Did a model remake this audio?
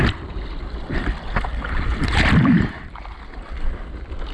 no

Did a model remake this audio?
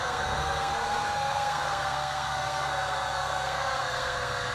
yes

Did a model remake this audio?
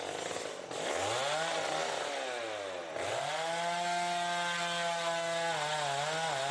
no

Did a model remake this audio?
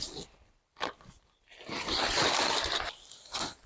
yes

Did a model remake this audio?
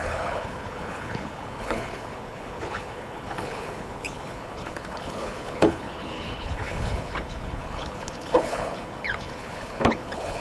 yes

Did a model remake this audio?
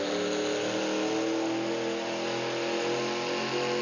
no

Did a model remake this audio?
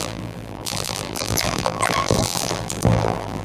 yes